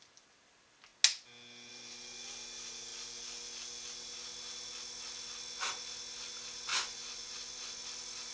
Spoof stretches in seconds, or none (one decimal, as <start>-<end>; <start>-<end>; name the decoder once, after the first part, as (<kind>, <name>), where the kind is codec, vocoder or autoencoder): 6.7-7.8 (vocoder, Vocos)

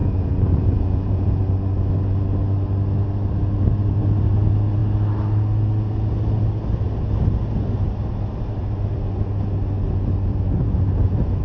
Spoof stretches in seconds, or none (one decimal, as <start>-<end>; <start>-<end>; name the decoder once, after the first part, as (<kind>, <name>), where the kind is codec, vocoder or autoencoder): 0.0-1.4 (vocoder, Vocos)

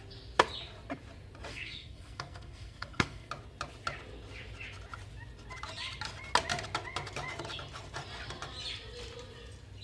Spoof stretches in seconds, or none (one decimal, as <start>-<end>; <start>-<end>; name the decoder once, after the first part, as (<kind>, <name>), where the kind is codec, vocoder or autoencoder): 1.5-3.3 (codec, SNAC)

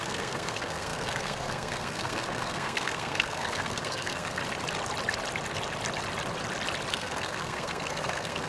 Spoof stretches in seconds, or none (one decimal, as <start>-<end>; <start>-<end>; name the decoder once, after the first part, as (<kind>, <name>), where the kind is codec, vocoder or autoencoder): 0.0-4.4 (codec, SNAC); 6.9-8.5

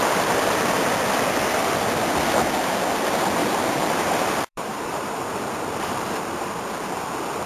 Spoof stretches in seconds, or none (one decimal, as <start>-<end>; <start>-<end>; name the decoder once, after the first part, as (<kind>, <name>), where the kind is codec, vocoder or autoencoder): 3.4-6.6 (vocoder, BigVGAN v2)

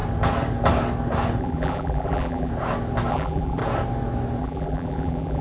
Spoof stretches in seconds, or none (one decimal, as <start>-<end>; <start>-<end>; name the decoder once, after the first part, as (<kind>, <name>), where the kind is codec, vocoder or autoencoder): 1.4-2.5 (vocoder, BigVGAN v2); 3.1-3.6; 4.4-5.4

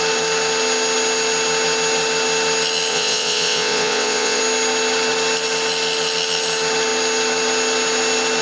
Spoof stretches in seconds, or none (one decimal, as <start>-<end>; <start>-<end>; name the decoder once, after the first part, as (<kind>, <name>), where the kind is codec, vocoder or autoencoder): 2.9-4.4 (vocoder, WaveNeXt)

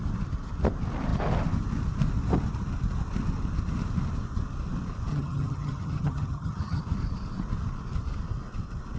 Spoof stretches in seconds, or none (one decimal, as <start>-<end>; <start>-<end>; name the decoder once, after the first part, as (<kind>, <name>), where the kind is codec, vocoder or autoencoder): 5.1-6.8 (vocoder, HiFi-GAN)